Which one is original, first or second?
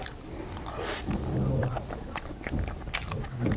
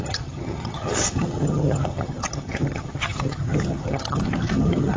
first